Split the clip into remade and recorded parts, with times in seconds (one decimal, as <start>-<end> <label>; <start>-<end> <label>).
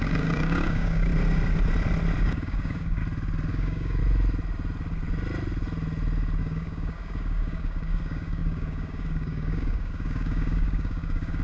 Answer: 0.0-1.1 remade; 1.1-2.2 recorded; 2.2-3.0 remade; 3.0-3.5 recorded; 3.5-4.0 remade; 4.0-6.4 recorded; 6.4-11.4 remade